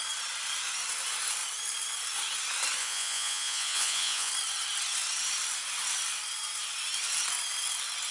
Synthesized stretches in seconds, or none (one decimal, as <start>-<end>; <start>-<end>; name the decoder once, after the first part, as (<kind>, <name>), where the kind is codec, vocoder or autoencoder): 2.8-4.3 (vocoder, Vocos)